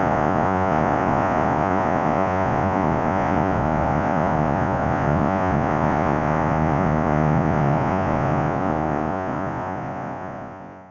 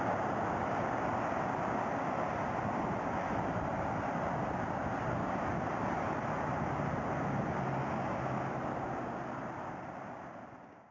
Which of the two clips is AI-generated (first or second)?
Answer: first